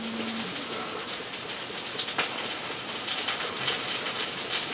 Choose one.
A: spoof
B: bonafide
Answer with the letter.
B